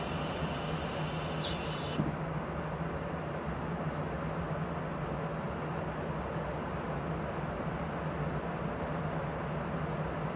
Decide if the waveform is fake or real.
real